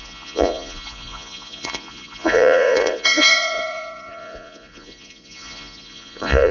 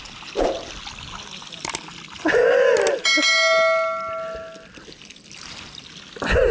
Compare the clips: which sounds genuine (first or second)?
second